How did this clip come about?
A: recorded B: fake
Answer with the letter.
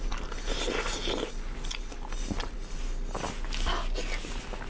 A